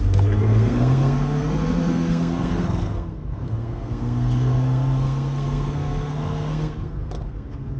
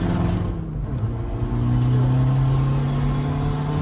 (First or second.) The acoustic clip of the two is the second